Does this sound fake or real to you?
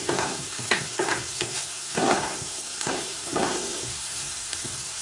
fake